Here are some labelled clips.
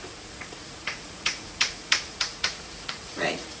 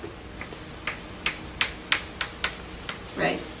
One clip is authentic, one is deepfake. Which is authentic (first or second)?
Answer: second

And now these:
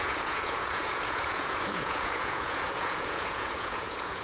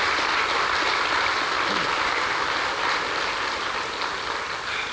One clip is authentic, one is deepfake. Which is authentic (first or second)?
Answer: second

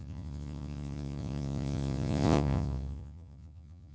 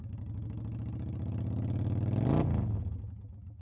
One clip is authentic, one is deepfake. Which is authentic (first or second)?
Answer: second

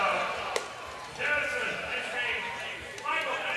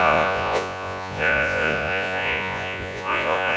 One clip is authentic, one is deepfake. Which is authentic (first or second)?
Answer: first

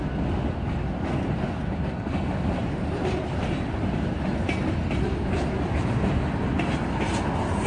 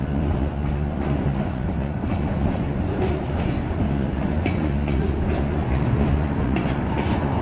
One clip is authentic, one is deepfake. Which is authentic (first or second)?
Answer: first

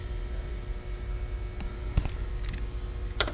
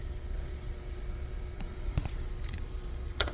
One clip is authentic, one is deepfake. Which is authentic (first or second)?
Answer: first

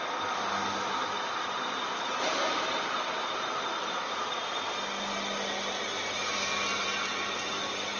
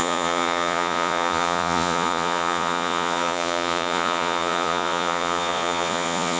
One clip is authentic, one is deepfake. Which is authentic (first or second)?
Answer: first